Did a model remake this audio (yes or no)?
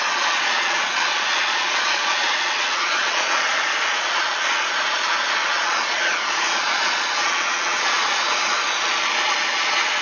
yes